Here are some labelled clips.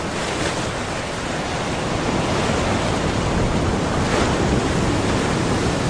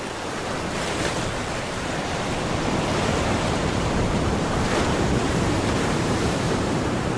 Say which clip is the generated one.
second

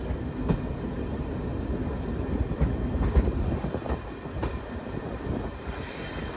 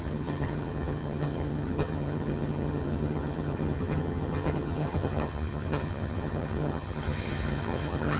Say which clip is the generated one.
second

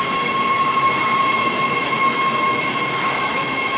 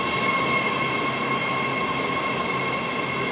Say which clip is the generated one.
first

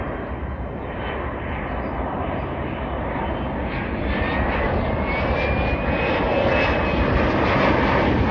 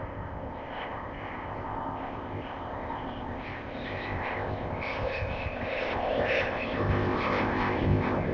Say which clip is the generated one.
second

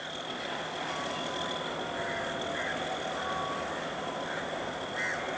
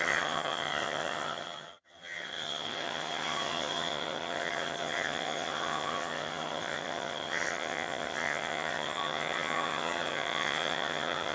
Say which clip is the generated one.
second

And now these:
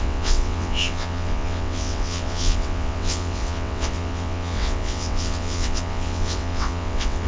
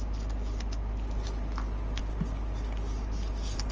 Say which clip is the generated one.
first